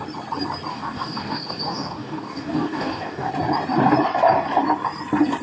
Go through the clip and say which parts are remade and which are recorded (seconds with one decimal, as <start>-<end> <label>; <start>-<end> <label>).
0.0-0.7 recorded; 0.7-3.3 remade; 3.3-5.4 recorded